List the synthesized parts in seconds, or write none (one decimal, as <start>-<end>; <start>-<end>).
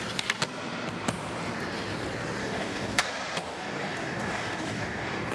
2.4-3.1; 3.5-5.3